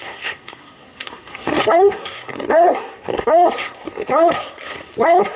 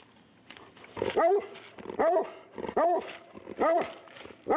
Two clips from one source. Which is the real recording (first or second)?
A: second